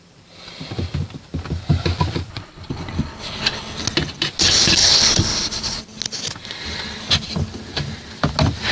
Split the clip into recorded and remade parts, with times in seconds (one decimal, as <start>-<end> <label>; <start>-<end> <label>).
0.0-2.3 recorded; 2.3-3.8 remade; 3.8-4.8 recorded; 4.8-5.8 remade; 5.8-8.7 recorded

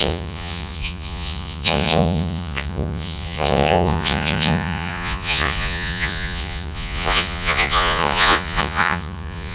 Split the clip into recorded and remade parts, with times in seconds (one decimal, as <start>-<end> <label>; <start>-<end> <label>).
0.0-9.5 remade

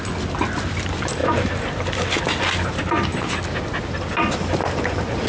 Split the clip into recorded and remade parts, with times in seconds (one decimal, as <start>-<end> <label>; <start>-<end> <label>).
0.0-1.2 recorded; 1.2-2.2 remade; 2.2-5.3 recorded

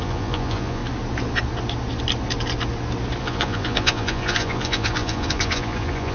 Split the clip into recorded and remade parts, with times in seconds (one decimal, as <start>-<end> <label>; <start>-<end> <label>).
0.0-0.8 remade; 0.8-3.2 recorded; 3.2-6.1 remade

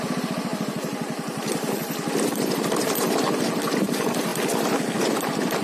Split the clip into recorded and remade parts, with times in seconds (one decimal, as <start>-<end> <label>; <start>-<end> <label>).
0.0-4.3 remade; 4.3-5.0 recorded; 5.0-5.6 remade

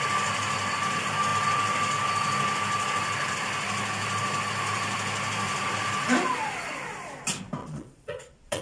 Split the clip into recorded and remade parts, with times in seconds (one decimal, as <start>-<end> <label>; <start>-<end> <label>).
0.0-7.6 recorded; 7.6-8.6 remade